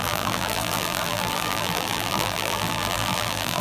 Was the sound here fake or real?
fake